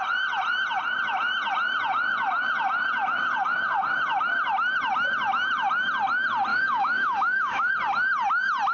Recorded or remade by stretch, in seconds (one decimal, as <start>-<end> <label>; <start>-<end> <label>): 0.0-6.5 recorded; 6.5-7.7 remade; 7.7-8.7 recorded

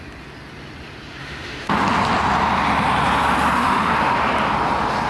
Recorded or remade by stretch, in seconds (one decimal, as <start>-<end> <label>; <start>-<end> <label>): 0.0-1.2 recorded; 1.2-1.7 remade; 1.7-3.6 recorded; 3.6-4.2 remade; 4.2-5.1 recorded

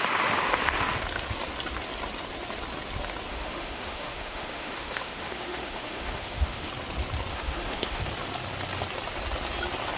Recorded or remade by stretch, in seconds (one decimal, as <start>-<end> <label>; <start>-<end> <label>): 0.0-3.3 recorded; 3.3-6.7 remade; 6.7-7.3 recorded; 7.3-8.1 remade; 8.1-10.0 recorded

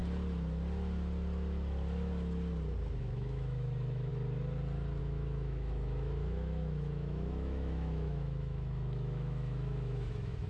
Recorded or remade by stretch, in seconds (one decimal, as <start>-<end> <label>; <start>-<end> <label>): 0.0-3.0 recorded; 3.0-4.1 remade; 4.1-5.0 recorded; 5.0-10.5 remade

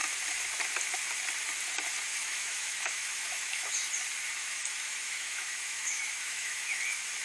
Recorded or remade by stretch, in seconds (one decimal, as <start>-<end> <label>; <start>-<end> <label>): 0.0-2.1 recorded; 2.1-3.7 remade; 3.7-4.4 recorded; 4.4-6.8 remade; 6.8-7.2 recorded

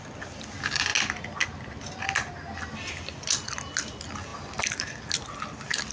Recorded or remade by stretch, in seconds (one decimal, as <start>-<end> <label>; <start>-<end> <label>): 0.0-5.9 recorded

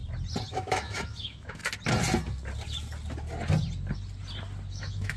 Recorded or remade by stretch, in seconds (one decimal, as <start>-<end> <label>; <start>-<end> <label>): 0.0-0.5 recorded; 0.5-1.6 remade; 1.6-4.7 recorded; 4.7-5.2 remade

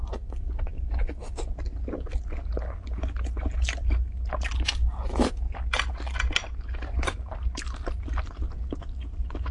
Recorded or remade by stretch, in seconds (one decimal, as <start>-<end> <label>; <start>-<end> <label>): 0.0-9.5 recorded